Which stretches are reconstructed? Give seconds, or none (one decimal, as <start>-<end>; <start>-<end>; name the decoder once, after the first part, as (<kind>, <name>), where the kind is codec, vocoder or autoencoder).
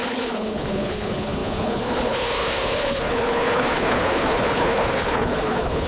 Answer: 0.0-5.9 (codec, HILCodec)